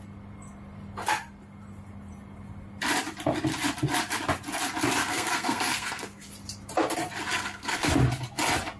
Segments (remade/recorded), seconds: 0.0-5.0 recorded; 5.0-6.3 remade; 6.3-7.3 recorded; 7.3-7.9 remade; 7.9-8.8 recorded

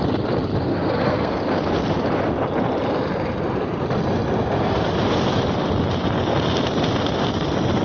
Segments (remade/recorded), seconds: 0.0-0.7 recorded; 0.7-1.4 remade; 1.4-7.8 recorded

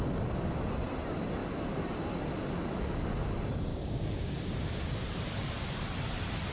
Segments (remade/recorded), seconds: 0.0-3.7 recorded; 3.7-5.0 remade; 5.0-6.5 recorded

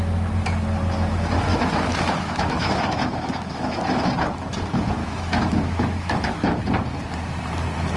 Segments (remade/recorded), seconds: 0.0-1.5 recorded; 1.5-3.7 remade; 3.7-5.0 recorded; 5.0-6.6 remade; 6.6-8.0 recorded

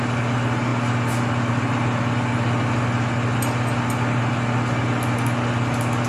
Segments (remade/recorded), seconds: 0.0-6.1 recorded

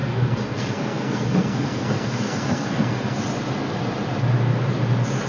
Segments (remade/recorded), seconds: 0.0-3.2 remade; 3.2-5.3 recorded